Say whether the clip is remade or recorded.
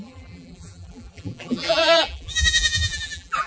remade